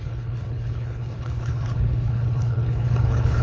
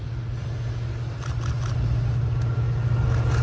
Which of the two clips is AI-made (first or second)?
first